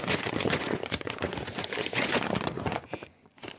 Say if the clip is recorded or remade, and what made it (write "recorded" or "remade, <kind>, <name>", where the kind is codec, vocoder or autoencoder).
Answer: remade, vocoder, Vocos